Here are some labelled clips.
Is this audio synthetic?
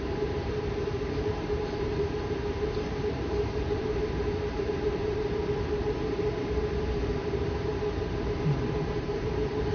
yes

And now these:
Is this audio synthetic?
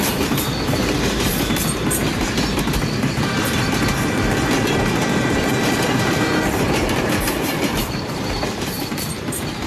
yes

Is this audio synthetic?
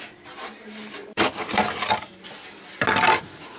no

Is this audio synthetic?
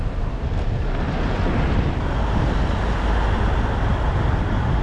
no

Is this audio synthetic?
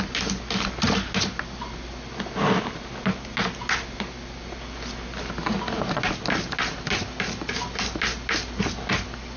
no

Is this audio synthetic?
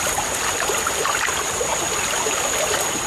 no